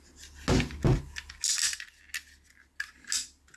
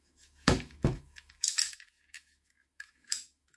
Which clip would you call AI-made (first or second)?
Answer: second